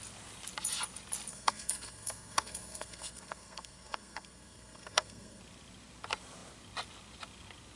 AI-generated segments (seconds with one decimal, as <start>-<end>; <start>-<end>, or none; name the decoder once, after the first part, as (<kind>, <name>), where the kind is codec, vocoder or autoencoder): 1.3-5.4 (codec, SNAC)